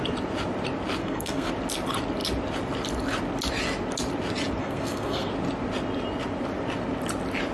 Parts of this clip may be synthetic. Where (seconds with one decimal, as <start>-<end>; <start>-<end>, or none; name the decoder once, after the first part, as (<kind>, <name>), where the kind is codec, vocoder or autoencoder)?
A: 1.0-1.5 (codec, SNAC); 4.6-5.3